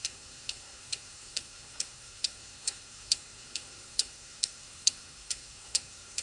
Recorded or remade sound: remade